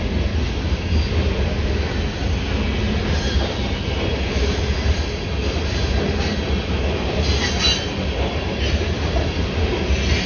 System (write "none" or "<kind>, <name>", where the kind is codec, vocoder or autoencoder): none